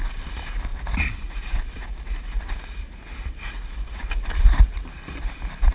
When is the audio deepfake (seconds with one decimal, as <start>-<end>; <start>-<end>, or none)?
none